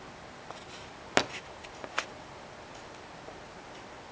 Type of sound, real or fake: real